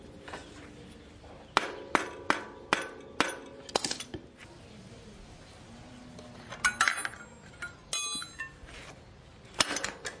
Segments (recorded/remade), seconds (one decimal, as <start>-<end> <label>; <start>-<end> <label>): 0.0-10.2 recorded